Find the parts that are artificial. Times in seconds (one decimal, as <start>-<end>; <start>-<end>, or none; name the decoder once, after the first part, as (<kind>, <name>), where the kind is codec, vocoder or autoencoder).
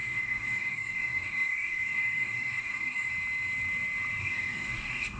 0.0-3.1 (codec, DAC); 4.2-5.2